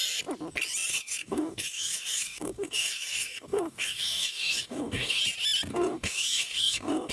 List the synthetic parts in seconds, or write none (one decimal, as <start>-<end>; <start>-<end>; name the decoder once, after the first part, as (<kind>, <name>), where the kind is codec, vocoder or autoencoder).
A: 0.9-5.2 (codec, DAC); 5.7-7.1